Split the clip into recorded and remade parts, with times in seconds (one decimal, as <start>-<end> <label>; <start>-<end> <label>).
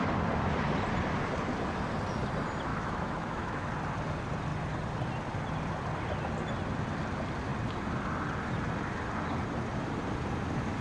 0.0-2.7 recorded; 2.7-3.7 remade; 3.7-10.8 recorded